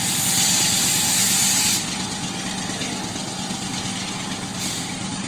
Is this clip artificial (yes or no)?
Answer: no